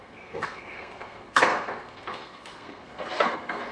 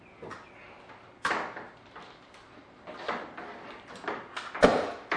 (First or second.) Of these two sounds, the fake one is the first